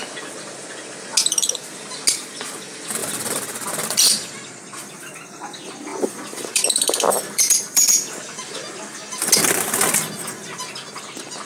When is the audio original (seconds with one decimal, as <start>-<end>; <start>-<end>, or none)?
0.0-1.2; 1.7-3.0; 4.3-5.9; 8.2-11.4